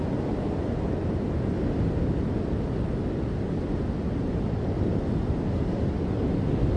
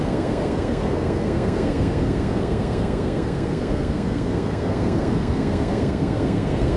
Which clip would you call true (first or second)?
first